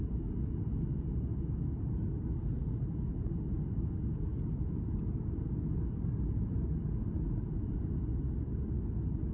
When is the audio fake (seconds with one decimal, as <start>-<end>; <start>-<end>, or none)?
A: none

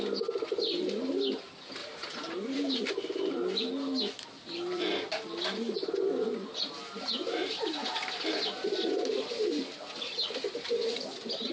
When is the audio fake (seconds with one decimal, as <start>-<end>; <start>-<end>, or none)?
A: 1.8-2.7; 7.2-7.7